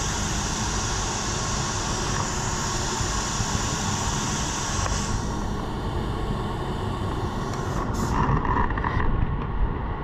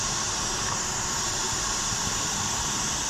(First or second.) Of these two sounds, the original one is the first